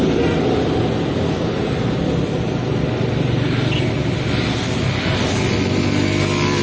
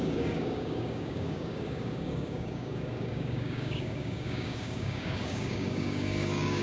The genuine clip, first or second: first